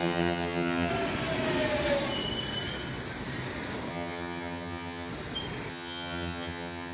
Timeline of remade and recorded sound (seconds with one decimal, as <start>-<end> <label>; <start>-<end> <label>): 0.0-0.9 remade; 0.9-3.9 recorded; 3.9-5.1 remade; 5.1-5.7 recorded; 5.7-6.9 remade